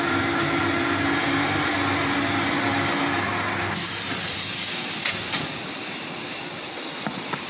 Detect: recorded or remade recorded